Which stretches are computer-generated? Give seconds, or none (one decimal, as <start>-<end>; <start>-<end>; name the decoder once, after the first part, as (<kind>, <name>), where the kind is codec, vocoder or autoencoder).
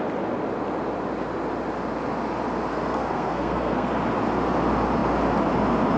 2.7-3.9 (codec, SNAC)